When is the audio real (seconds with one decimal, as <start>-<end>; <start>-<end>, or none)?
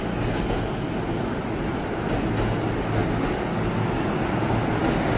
0.0-5.2